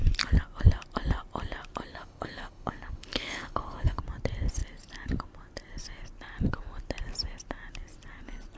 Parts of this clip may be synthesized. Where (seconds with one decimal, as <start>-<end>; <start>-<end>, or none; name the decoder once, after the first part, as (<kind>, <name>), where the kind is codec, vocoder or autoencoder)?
1.9-4.0 (codec, HILCodec)